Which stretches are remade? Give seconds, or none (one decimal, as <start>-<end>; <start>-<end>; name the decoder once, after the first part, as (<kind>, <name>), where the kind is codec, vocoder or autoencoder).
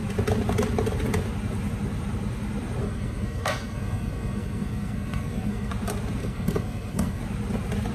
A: 2.8-5.7 (codec, SNAC); 6.2-7.2